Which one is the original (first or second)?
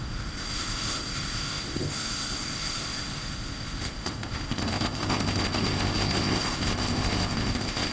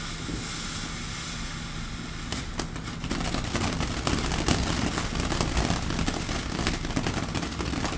second